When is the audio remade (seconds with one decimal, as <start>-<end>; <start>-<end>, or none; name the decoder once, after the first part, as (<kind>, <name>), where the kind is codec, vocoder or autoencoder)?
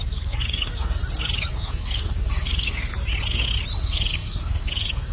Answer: 0.0-1.0 (codec, SNAC); 1.5-2.9; 3.8-5.1